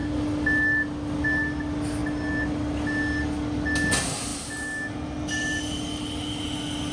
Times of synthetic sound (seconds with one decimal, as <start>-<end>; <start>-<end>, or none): none